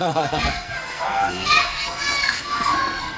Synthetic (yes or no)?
yes